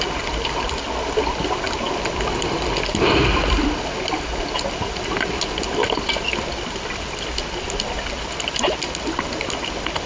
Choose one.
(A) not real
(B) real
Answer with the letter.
B